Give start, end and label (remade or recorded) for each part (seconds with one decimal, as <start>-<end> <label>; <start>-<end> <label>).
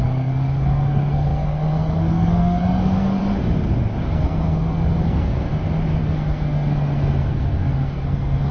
0.0-3.2 remade; 3.2-4.1 recorded; 4.1-5.5 remade; 5.5-6.0 recorded; 6.0-8.5 remade